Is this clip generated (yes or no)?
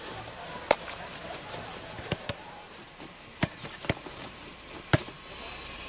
yes